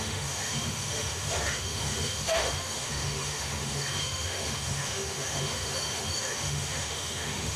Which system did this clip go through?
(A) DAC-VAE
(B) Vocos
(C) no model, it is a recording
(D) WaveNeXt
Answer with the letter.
A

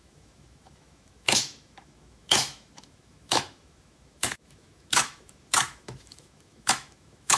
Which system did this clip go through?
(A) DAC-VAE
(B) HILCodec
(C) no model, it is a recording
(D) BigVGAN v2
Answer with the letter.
A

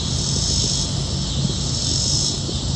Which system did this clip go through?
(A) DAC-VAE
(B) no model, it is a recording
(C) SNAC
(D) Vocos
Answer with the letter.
B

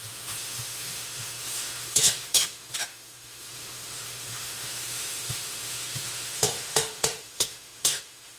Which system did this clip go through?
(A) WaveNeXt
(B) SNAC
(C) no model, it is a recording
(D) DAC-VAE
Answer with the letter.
D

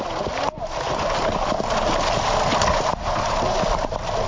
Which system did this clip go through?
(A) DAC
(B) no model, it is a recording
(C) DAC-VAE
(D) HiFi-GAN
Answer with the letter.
B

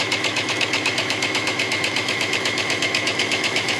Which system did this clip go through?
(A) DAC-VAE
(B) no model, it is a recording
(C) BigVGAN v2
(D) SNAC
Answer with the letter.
A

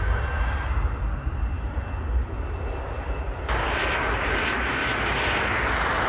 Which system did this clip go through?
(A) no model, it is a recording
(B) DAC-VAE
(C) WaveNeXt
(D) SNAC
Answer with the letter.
A